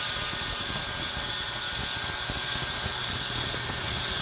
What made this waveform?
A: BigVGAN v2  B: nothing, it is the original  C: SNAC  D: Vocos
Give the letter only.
B